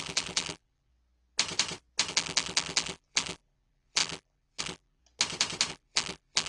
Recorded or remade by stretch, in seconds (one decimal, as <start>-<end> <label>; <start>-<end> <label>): 0.0-0.9 remade; 0.9-2.1 recorded; 2.1-5.0 remade; 5.0-5.7 recorded; 5.7-6.5 remade